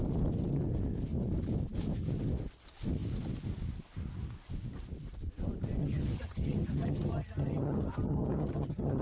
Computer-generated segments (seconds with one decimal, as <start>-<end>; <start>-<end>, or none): 5.8-9.0